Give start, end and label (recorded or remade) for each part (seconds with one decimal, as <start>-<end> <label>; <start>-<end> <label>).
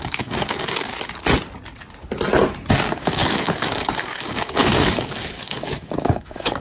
0.0-0.9 remade; 0.9-2.7 recorded; 2.7-6.6 remade